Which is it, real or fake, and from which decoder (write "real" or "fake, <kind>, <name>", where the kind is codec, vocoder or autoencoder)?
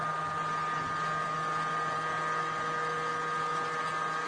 real